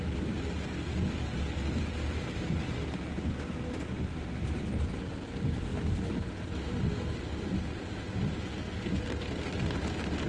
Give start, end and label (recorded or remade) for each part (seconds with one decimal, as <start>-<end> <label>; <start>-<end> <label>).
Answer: 0.0-10.3 recorded